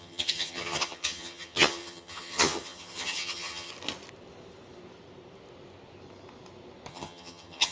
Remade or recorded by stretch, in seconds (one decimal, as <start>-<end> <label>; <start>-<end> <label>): 0.0-3.7 remade; 3.7-6.9 recorded; 6.9-7.7 remade